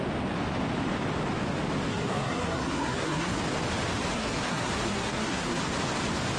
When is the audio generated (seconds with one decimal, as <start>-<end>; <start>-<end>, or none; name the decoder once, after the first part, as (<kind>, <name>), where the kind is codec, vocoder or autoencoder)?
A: 1.9-3.4 (codec, SNAC); 4.1-5.6